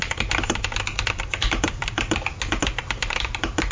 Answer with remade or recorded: recorded